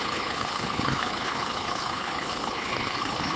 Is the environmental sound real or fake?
fake